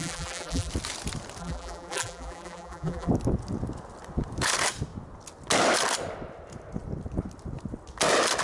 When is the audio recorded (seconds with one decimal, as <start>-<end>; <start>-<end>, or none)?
0.7-1.4; 3.1-8.4